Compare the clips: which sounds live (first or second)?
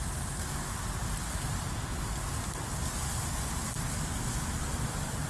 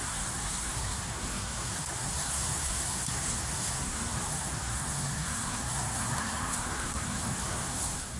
first